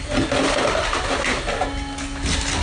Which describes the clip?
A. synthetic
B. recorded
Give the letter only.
B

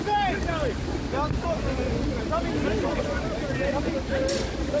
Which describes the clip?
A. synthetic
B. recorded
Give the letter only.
B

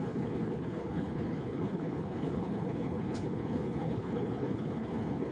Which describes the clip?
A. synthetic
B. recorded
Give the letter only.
A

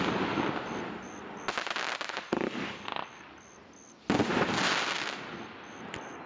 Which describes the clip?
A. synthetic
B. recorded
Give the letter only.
B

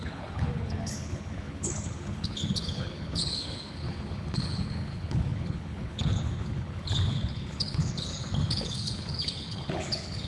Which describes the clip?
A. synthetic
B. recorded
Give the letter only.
A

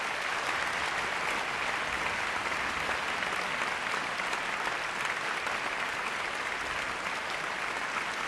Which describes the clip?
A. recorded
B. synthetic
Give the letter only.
A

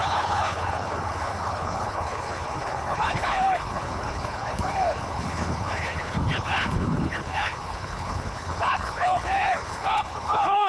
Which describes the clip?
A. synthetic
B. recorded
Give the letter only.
A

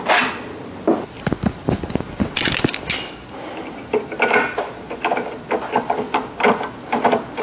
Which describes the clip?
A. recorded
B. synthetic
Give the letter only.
A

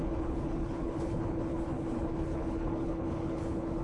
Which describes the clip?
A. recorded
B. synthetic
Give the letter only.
B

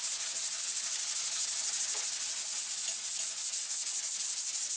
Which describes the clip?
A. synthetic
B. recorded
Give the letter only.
B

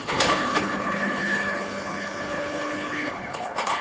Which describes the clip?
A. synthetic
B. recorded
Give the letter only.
A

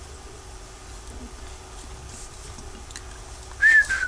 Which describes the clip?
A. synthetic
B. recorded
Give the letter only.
B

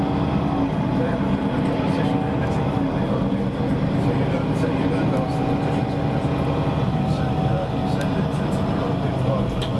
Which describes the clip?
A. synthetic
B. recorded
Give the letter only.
B